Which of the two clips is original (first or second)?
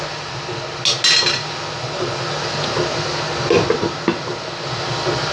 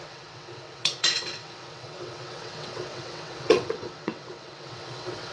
first